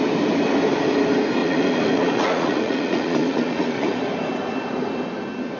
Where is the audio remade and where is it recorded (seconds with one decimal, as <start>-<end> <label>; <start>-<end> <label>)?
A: 0.0-1.4 recorded; 1.4-4.0 remade; 4.0-5.6 recorded